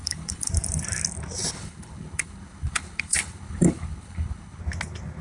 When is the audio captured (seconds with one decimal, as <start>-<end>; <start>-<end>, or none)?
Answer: 0.5-1.5; 4.6-5.2